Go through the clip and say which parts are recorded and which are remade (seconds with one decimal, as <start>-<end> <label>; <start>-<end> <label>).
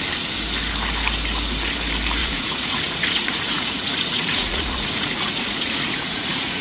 0.0-2.2 recorded; 2.2-6.6 remade